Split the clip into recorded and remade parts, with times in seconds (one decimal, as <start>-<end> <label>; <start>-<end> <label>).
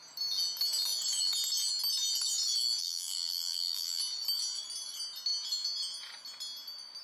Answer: 0.0-2.8 recorded; 2.8-4.0 remade; 4.0-7.0 recorded